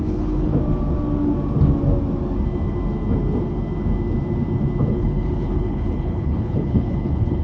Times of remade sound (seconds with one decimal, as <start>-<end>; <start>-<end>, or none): 0.0-0.5; 4.9-7.4